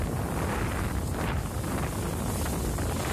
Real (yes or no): yes